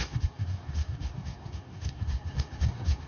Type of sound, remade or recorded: remade